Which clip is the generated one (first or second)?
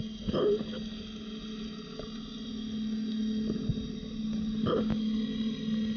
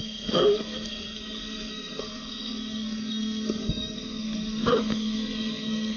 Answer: second